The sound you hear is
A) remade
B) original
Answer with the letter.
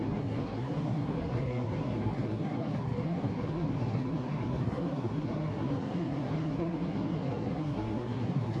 A